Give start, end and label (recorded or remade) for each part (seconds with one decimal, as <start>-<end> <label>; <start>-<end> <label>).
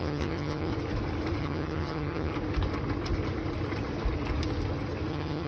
0.0-0.7 remade; 0.7-1.4 recorded; 1.4-2.3 remade; 2.3-5.1 recorded; 5.1-5.5 remade